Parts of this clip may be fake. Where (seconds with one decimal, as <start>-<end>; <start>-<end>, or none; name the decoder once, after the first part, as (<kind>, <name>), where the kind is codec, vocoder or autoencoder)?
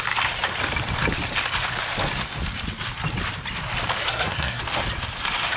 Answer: 4.0-4.6 (codec, SNAC)